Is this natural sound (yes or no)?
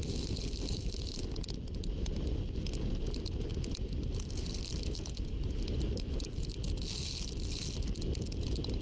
yes